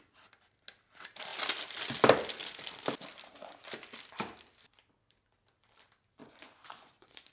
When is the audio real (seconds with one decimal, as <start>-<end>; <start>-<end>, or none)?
0.0-6.2